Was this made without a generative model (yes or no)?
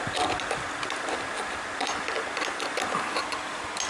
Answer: yes